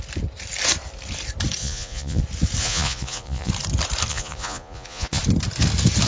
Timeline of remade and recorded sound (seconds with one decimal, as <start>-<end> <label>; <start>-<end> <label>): 0.0-1.6 recorded; 1.6-2.2 remade; 2.2-2.6 recorded; 2.6-3.5 remade; 3.5-4.1 recorded; 4.1-5.2 remade; 5.2-6.1 recorded